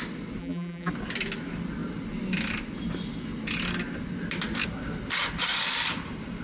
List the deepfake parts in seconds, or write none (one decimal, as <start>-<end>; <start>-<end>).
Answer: 0.4-0.9